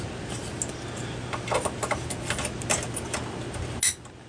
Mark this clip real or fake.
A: real